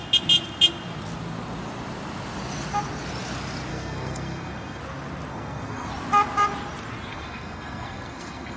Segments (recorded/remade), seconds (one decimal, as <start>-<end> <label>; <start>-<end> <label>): 0.0-3.7 recorded; 3.7-4.8 remade; 4.8-5.3 recorded; 5.3-5.9 remade; 5.9-7.1 recorded; 7.1-8.6 remade